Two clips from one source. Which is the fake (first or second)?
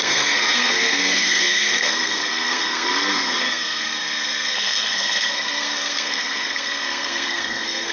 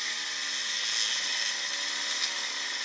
first